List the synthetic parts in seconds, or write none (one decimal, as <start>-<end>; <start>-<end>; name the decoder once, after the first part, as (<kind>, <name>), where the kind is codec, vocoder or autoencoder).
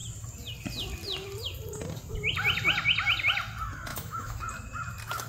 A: 3.9-4.4 (autoencoder, DAC-VAE)